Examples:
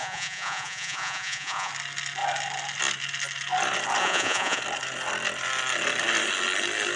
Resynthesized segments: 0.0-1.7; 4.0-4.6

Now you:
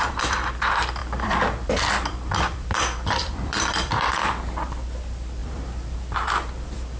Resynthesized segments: 0.0-7.0